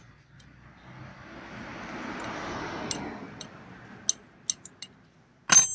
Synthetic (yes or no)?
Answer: no